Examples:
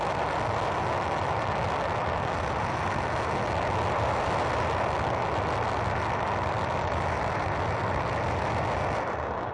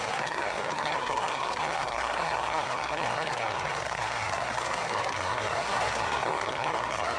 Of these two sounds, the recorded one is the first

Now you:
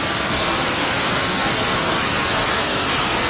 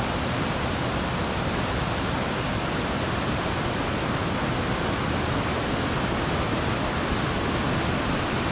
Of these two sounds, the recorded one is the second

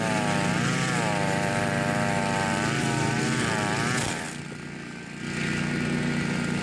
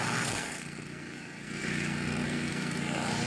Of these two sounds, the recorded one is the first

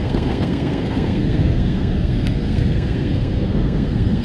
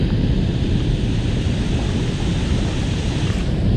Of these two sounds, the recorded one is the second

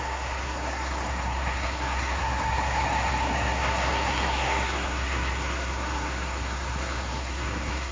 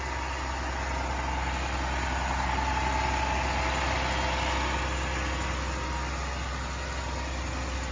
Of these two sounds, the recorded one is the second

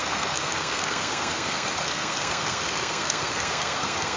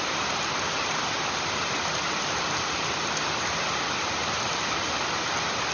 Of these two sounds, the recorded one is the second